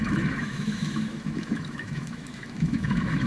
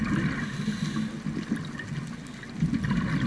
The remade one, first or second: first